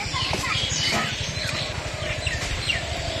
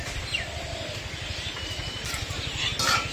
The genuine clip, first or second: second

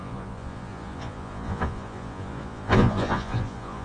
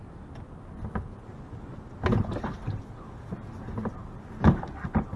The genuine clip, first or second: second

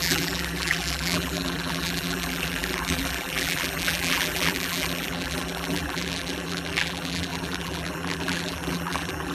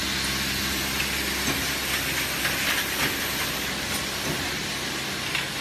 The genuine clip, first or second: second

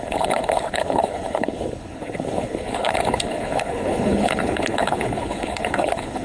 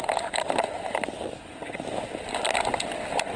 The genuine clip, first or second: second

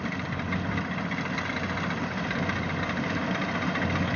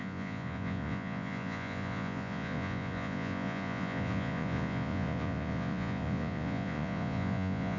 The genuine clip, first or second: first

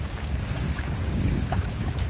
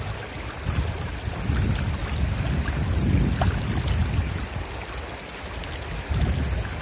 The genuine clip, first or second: second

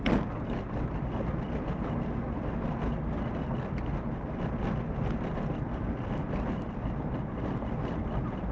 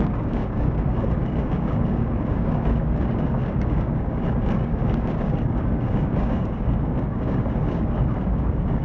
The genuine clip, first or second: first